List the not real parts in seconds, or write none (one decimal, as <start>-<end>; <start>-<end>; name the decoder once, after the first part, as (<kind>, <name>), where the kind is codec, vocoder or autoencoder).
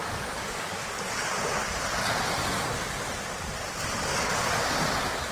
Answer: 0.0-0.8 (codec, DAC); 4.0-4.4